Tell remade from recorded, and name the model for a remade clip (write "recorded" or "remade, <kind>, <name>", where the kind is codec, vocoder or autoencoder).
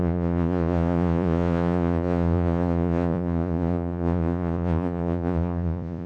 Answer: remade, vocoder, Vocos